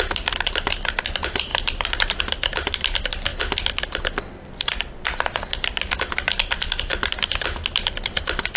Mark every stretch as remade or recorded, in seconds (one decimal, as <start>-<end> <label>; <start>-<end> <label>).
0.0-8.6 recorded